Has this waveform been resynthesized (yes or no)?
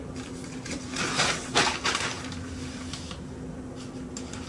no